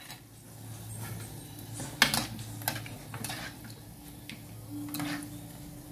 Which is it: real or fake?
real